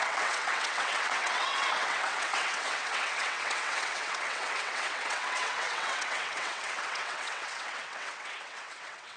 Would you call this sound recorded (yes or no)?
no